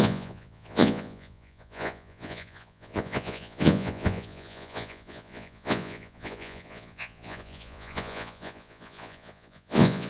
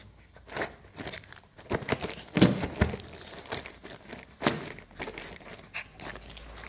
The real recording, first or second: second